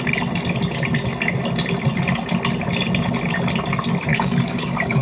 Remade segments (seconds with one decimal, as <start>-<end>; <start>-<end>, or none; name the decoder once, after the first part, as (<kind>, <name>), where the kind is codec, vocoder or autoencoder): 4.1-5.0 (codec, DAC)